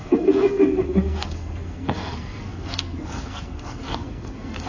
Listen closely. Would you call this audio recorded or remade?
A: remade